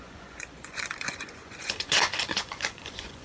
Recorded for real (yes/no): no